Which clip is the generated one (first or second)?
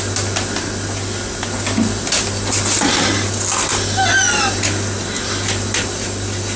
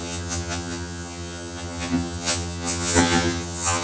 second